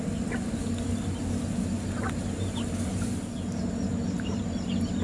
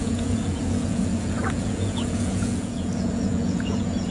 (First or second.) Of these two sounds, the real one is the first